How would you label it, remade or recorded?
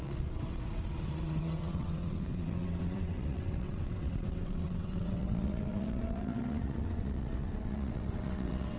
remade